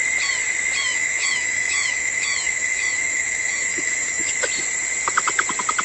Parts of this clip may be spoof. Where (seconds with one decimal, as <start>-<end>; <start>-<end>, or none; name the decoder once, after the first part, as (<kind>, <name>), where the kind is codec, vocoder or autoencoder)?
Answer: 0.9-4.4 (autoencoder, DAC-VAE)